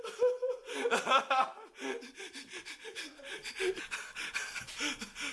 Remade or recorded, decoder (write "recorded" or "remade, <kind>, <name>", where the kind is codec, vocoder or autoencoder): recorded